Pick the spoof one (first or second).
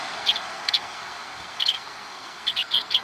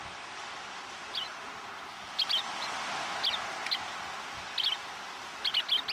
first